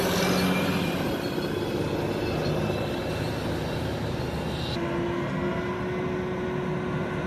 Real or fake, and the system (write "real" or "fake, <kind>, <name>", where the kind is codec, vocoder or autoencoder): real